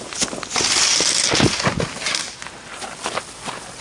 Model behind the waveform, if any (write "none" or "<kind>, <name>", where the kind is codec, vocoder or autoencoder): none